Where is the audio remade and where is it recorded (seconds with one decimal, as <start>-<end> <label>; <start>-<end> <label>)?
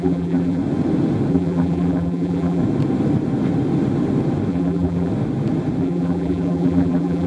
0.0-0.6 remade; 0.6-1.3 recorded; 1.3-2.6 remade; 2.6-4.5 recorded; 4.5-5.1 remade; 5.1-5.8 recorded; 5.8-7.3 remade